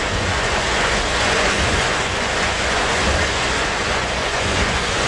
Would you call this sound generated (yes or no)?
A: yes